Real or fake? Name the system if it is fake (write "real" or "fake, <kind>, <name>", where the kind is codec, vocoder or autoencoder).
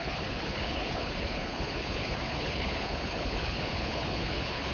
fake, codec, HILCodec